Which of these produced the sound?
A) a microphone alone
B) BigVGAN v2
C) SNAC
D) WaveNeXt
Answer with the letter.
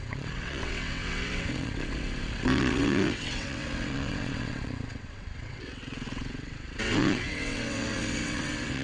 D